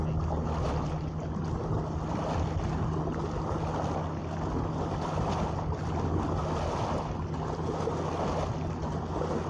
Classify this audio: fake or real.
real